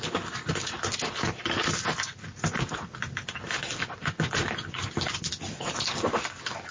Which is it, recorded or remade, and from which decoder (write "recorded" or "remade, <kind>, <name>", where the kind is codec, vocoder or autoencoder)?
recorded